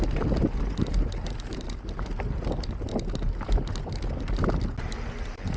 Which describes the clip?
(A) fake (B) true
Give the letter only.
B